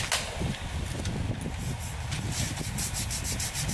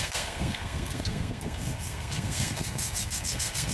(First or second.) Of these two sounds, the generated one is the second